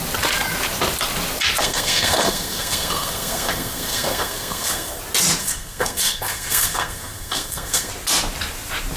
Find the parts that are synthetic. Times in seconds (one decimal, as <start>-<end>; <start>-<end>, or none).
1.6-5.0; 5.4-7.9